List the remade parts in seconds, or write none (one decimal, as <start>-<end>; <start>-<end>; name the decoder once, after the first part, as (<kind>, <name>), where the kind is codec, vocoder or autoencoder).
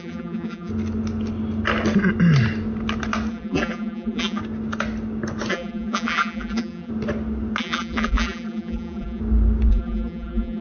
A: 0.0-0.7 (vocoder, BigVGAN v2); 3.3-4.4; 5.5-6.9; 7.6-9.2; 9.7-10.6